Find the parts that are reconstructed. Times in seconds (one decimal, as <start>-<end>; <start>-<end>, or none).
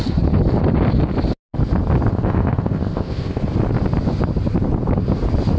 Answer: 2.1-3.4